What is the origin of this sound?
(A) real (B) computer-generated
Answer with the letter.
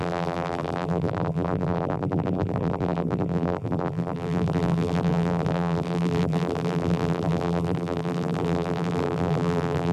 B